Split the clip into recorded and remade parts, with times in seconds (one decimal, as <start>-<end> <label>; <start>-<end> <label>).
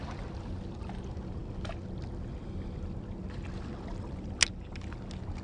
0.0-5.4 recorded